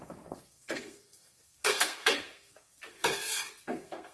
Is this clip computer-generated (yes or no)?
yes